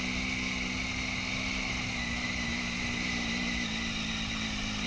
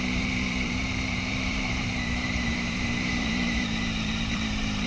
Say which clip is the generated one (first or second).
second